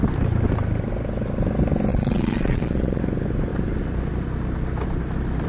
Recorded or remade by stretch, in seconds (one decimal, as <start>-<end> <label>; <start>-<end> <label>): 0.0-1.9 recorded; 1.9-3.0 remade; 3.0-5.5 recorded